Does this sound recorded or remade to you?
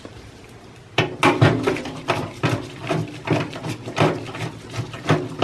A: recorded